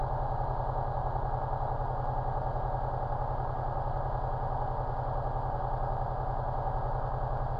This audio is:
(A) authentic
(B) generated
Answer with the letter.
A